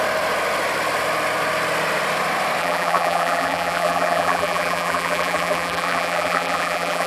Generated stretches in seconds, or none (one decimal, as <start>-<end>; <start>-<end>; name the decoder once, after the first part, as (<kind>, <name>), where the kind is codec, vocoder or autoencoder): 2.6-7.1 (vocoder, BigVGAN v2)

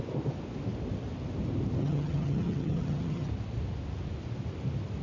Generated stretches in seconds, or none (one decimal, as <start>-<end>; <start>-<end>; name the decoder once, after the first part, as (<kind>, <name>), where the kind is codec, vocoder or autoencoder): 1.8-3.3 (vocoder, HiFi-GAN)

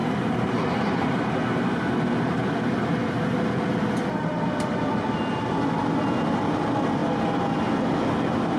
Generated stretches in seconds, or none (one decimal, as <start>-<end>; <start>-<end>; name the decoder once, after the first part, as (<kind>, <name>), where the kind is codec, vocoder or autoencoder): 0.0-1.4 (vocoder, BigVGAN v2)

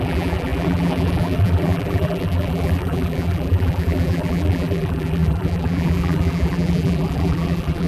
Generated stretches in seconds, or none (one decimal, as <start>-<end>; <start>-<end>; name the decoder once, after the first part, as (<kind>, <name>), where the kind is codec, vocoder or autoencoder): 0.0-7.9 (vocoder, BigVGAN v2)

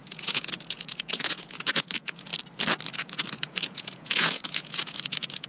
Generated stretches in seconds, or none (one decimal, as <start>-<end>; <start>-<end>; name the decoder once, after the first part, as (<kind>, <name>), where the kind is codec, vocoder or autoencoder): 0.0-2.3 (vocoder, Vocos); 2.9-5.5

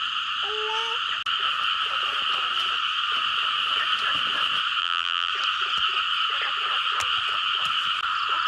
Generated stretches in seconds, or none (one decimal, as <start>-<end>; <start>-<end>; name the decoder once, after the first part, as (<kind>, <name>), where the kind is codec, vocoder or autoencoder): 4.8-5.3 (vocoder, BigVGAN v2)